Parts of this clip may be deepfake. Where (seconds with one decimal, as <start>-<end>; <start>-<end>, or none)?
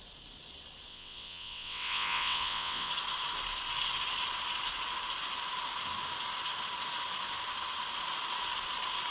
0.9-2.9